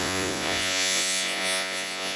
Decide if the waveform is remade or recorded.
remade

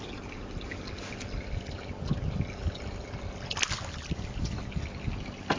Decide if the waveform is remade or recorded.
recorded